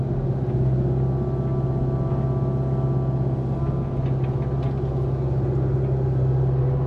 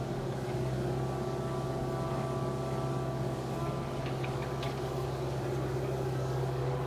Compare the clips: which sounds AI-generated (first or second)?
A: second